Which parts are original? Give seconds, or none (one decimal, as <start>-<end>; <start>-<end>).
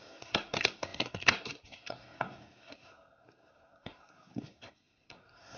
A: none